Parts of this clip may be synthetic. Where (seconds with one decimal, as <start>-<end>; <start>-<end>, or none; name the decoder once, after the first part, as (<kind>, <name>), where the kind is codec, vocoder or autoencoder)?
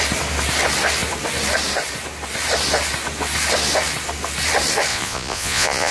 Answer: 4.9-5.9 (vocoder, Vocos)